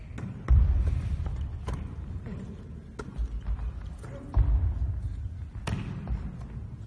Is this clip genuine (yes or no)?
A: yes